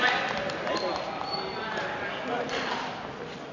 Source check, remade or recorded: recorded